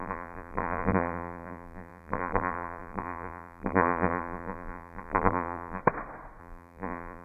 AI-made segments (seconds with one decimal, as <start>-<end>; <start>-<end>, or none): 0.0-5.8; 6.4-7.2